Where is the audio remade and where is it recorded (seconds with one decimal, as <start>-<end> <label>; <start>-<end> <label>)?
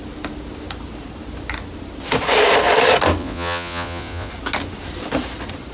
0.0-3.2 recorded; 3.2-4.3 remade; 4.3-5.7 recorded